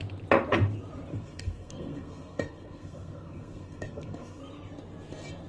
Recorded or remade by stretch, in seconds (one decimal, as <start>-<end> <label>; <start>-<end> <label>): 0.0-1.1 recorded; 1.1-4.4 remade; 4.4-5.5 recorded